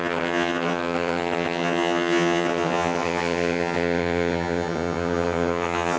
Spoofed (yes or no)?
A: yes